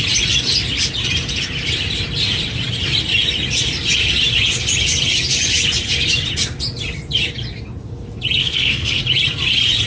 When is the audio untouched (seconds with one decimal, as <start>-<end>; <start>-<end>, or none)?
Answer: 0.0-8.4; 9.0-9.9